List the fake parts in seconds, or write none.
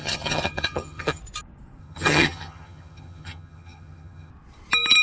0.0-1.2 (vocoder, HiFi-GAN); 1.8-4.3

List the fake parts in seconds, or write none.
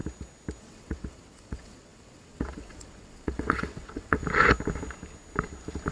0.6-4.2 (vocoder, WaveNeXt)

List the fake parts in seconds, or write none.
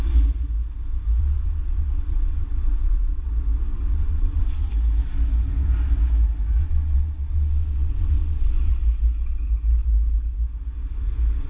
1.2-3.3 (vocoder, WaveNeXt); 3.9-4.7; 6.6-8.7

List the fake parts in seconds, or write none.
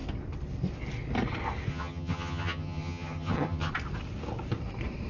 1.7-3.7 (vocoder, HiFi-GAN)